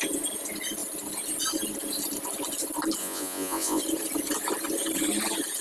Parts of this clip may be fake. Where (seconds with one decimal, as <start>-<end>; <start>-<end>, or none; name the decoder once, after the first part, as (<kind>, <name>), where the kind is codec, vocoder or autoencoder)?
3.0-3.8 (vocoder, Vocos)